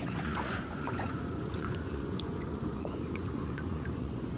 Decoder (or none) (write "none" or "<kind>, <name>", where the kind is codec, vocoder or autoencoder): vocoder, Vocos